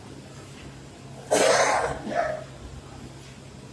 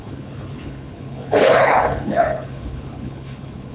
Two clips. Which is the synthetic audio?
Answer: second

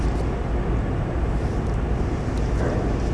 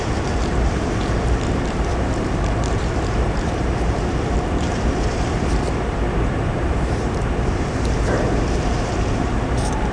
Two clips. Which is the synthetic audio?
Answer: second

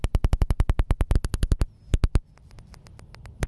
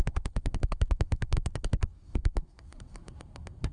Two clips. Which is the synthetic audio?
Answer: second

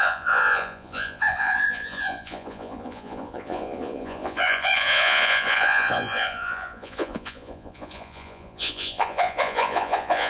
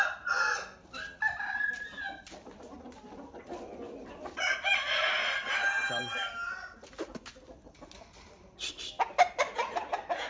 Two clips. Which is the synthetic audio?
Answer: first